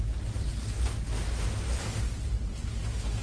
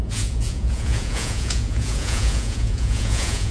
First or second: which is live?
first